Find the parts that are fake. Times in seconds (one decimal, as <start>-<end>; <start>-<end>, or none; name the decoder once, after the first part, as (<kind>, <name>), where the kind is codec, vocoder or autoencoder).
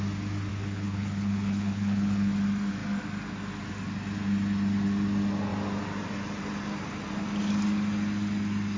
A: 0.5-2.3 (codec, HILCodec)